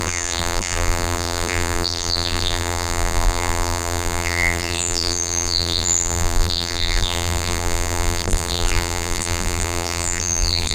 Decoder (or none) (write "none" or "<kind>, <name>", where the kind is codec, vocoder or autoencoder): vocoder, BigVGAN v2